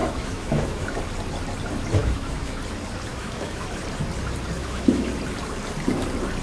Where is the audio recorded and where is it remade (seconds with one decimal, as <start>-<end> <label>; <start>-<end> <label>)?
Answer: 0.0-1.0 remade; 1.0-2.0 recorded; 2.0-2.6 remade; 2.6-3.1 recorded; 3.1-3.8 remade; 3.8-4.6 recorded; 4.6-5.1 remade; 5.1-6.4 recorded